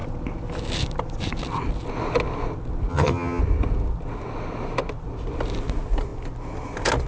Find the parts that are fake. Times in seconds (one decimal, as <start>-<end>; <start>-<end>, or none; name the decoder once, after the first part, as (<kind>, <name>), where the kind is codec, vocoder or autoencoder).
2.9-3.4 (vocoder, HiFi-GAN)